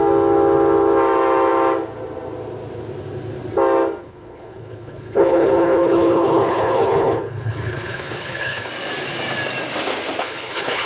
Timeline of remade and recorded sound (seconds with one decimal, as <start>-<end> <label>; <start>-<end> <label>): 0.0-4.0 recorded; 4.0-8.7 remade; 8.7-10.2 recorded; 10.2-10.9 remade